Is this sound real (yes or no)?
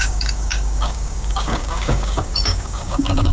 no